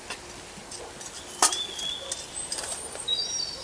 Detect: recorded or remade recorded